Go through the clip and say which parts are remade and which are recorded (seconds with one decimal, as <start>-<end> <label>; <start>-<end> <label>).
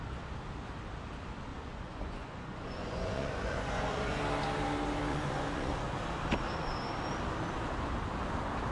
0.0-1.5 recorded; 1.5-4.2 remade; 4.2-5.1 recorded; 5.1-6.0 remade; 6.0-8.7 recorded